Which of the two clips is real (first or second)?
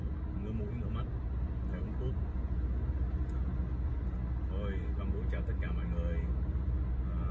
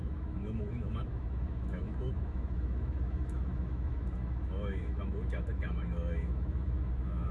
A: first